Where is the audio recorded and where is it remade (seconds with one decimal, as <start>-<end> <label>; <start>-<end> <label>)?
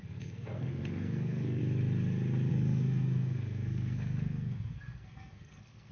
0.0-1.6 remade; 1.6-2.5 recorded; 2.5-5.9 remade